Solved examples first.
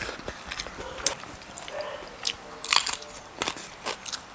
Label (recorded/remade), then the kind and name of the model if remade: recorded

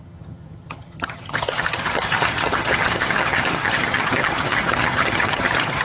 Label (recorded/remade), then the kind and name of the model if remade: remade, vocoder, HiFi-GAN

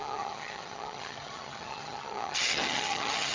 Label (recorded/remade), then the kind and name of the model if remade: remade, vocoder, HiFi-GAN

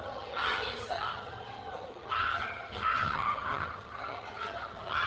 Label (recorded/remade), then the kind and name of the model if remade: remade, vocoder, HiFi-GAN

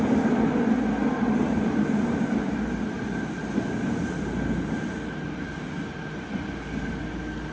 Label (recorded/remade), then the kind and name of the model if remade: recorded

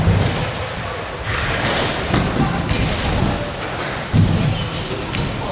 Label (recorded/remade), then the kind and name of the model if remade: recorded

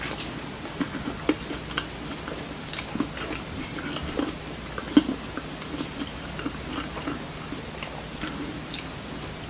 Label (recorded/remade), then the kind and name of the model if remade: recorded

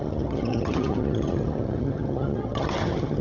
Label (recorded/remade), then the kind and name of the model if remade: remade, vocoder, HiFi-GAN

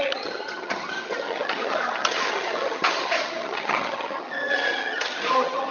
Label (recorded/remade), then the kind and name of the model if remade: remade, vocoder, HiFi-GAN